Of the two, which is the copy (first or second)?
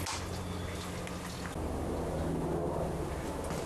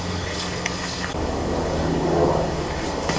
second